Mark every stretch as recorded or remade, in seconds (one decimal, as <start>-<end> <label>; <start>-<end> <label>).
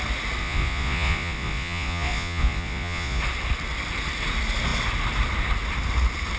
0.0-0.4 recorded; 0.4-3.2 remade; 3.2-6.4 recorded